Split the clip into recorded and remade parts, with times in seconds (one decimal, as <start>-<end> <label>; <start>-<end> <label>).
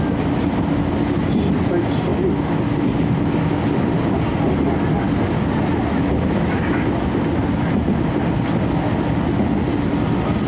0.0-10.5 recorded